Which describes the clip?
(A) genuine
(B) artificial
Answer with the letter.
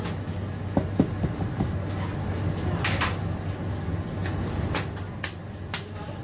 A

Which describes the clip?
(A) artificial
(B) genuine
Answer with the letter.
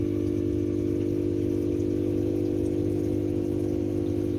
B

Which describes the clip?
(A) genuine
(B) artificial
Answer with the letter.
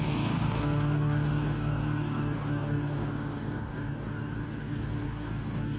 B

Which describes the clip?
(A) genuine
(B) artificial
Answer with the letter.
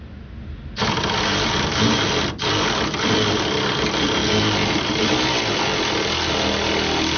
A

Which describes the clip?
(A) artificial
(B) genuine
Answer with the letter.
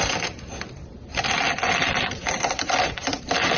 B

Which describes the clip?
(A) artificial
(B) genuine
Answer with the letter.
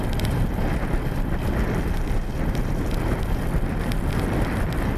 B